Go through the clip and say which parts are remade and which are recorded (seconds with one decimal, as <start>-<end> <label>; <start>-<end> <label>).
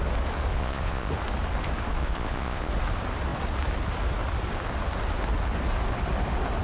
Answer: 0.0-0.5 recorded; 0.5-1.1 remade; 1.1-2.0 recorded; 2.0-2.7 remade; 2.7-6.6 recorded